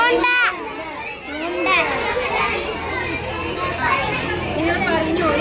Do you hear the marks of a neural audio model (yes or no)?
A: no